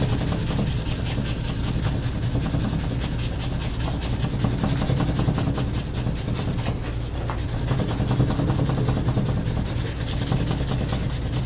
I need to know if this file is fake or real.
real